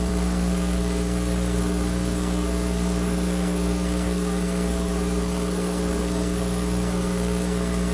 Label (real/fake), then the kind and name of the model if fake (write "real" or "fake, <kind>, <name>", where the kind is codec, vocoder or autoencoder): fake, codec, SNAC